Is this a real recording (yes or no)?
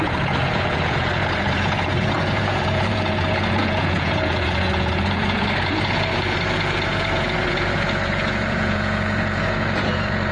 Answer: no